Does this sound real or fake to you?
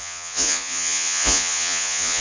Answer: fake